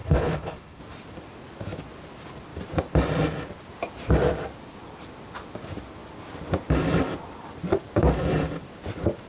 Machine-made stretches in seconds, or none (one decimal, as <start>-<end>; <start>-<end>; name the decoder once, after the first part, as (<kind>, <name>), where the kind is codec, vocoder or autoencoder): 0.0-0.8 (codec, HILCodec)